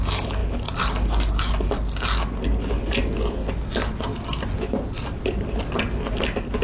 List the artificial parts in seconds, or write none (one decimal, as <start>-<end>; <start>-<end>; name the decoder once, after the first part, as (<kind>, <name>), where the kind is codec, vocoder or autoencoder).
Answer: none